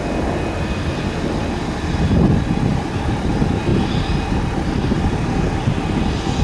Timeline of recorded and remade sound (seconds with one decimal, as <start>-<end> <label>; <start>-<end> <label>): 0.0-2.7 recorded; 2.7-3.3 remade; 3.3-6.4 recorded